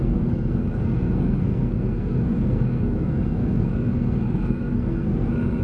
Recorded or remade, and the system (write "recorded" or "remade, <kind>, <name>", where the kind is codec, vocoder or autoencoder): remade, codec, SNAC